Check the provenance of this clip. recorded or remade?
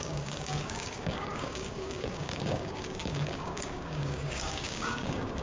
remade